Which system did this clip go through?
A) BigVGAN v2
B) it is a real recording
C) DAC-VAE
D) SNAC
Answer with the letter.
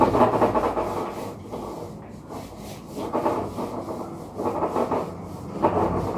B